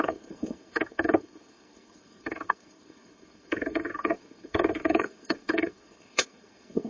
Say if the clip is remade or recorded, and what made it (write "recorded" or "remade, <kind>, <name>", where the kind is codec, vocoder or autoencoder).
remade, codec, SNAC